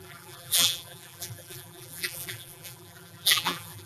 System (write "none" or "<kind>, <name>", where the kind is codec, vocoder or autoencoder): vocoder, BigVGAN v2